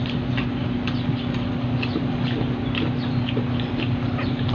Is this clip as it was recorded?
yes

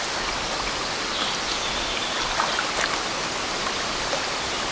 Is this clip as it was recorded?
yes